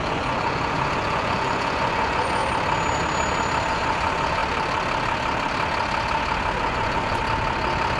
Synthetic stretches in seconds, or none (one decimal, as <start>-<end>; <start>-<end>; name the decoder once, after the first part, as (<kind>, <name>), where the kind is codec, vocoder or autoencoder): 0.0-2.4 (vocoder, Vocos); 3.7-4.4; 6.6-7.2